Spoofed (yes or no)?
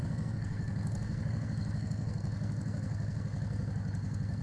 yes